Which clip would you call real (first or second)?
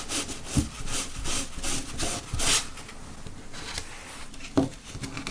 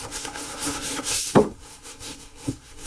first